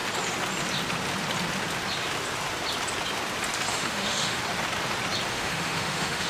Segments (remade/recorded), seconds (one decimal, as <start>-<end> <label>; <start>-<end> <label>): 0.0-3.7 recorded; 3.7-4.4 remade; 4.4-5.3 recorded; 5.3-6.3 remade